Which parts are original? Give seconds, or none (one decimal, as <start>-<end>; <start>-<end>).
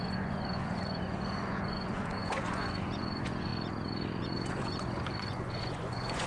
3.5-4.2